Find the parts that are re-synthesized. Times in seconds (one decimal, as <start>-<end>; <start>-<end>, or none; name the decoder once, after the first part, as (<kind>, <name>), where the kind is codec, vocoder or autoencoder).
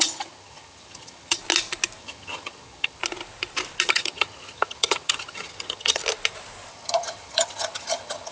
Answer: 0.0-1.4 (vocoder, HiFi-GAN); 2.0-3.0; 3.9-6.0; 6.7-8.3